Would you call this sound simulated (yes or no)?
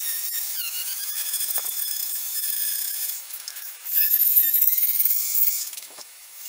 yes